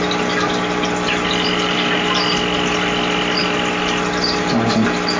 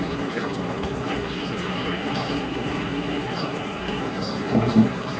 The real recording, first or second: first